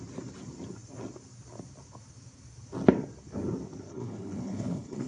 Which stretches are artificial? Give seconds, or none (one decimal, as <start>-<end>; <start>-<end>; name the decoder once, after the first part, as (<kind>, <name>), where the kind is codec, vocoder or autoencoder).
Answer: 3.9-5.1 (codec, HILCodec)